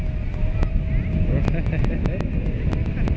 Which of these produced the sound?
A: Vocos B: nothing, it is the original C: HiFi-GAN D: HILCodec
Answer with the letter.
B